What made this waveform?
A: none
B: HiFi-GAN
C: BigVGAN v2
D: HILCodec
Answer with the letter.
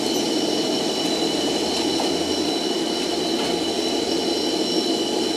A